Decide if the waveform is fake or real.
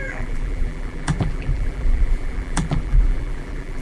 fake